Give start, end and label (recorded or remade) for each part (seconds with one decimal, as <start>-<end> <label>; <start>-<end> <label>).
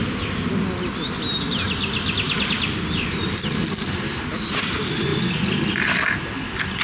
0.0-6.8 recorded